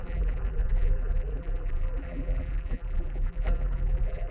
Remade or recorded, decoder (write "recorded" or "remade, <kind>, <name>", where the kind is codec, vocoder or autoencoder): remade, vocoder, BigVGAN v2